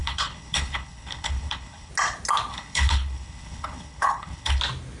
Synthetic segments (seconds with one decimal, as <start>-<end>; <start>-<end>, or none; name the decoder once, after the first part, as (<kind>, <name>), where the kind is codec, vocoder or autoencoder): 0.0-1.9 (codec, HILCodec); 2.5-4.6